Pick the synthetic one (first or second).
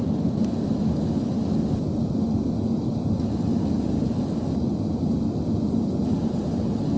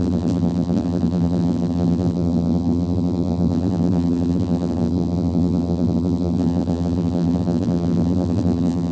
second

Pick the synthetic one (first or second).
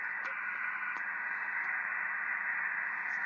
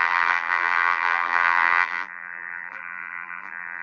second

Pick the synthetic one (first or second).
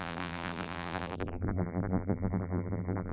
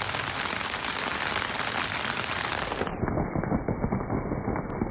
first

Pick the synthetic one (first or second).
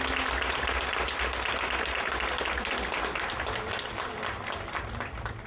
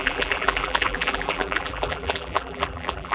second